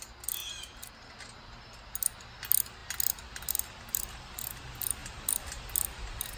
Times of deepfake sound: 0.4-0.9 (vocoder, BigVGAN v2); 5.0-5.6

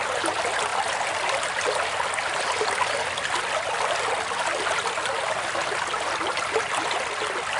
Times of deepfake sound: none